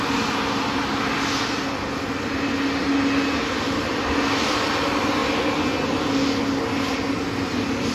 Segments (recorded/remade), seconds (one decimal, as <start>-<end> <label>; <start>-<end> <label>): 0.0-7.9 recorded